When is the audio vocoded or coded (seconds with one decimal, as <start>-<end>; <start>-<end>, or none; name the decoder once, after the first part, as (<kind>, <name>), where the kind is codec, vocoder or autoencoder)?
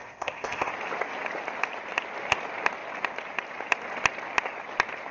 0.0-0.7 (codec, ZipCodec)